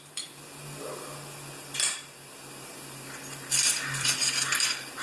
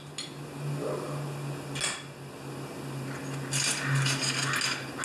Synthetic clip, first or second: first